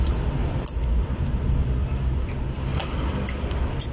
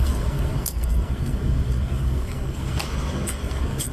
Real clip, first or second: first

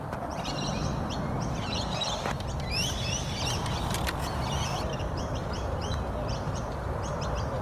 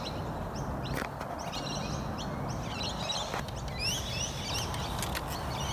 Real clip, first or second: second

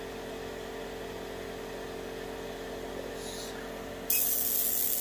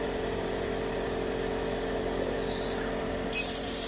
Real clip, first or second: first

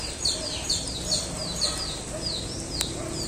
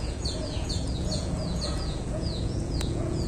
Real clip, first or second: first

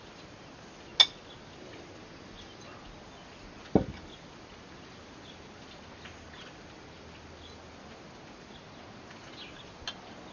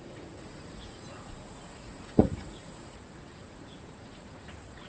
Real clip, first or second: first